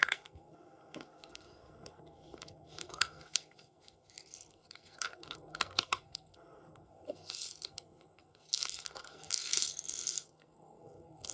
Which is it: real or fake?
fake